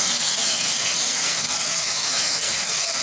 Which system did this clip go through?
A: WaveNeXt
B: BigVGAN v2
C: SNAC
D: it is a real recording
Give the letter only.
C